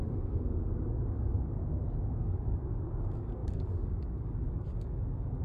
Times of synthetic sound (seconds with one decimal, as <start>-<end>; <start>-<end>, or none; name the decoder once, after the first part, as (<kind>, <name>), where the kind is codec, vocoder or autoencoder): 0.0-1.6 (codec, DAC); 2.2-5.4